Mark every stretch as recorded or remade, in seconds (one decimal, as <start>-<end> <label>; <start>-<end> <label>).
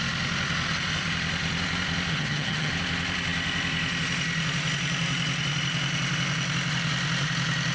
0.0-2.1 recorded; 2.1-2.7 remade; 2.7-7.7 recorded